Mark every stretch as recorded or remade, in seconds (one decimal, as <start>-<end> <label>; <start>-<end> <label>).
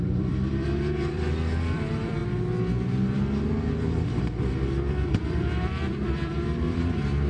0.0-2.2 remade; 2.2-4.9 recorded; 4.9-7.3 remade